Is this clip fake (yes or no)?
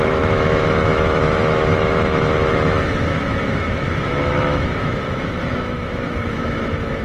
yes